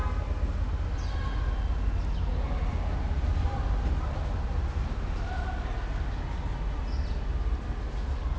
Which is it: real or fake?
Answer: real